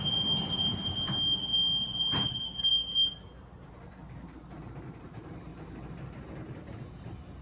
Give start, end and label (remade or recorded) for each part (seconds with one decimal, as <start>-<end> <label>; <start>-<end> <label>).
0.0-7.4 recorded